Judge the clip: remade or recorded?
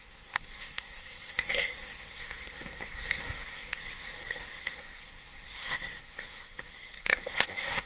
remade